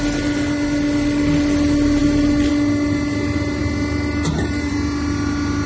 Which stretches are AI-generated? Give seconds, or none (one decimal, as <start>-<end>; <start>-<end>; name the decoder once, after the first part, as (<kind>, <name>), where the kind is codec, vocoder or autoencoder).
none